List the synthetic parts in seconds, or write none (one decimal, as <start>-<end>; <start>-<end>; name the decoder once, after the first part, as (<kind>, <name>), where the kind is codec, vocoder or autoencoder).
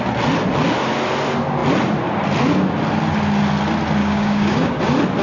4.0-4.8 (codec, DAC)